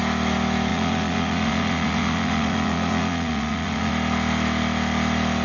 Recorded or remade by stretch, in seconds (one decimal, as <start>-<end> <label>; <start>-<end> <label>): 0.0-0.7 recorded; 0.7-3.9 remade; 3.9-5.4 recorded